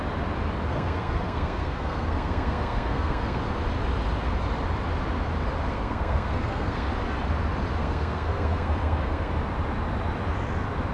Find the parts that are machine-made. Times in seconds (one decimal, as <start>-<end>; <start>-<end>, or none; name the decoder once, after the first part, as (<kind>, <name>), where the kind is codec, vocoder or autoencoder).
0.7-3.4 (codec, SNAC); 5.7-6.9; 7.8-9.3